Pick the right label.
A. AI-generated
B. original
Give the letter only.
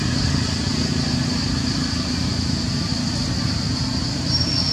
B